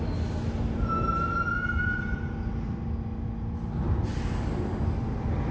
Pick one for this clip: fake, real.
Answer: real